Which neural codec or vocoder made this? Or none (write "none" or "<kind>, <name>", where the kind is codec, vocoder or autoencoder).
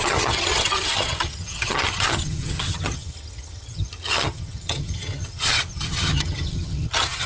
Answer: vocoder, HiFi-GAN